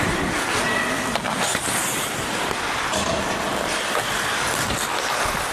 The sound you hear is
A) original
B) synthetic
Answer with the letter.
A